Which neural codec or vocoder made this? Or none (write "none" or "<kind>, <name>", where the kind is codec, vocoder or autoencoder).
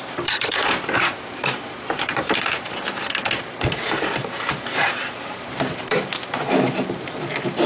vocoder, BigVGAN v2